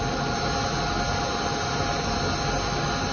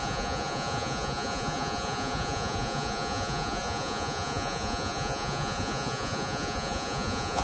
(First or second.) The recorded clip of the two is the first